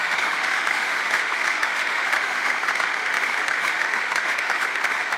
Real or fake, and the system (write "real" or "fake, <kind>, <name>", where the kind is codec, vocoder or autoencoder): fake, autoencoder, DAC-VAE